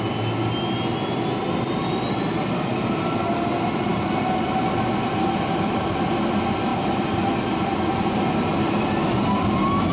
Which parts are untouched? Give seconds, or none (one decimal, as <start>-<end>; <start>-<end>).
0.0-6.7; 7.2-9.9